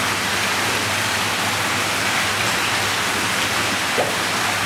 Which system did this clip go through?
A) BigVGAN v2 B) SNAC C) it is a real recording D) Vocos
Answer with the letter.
C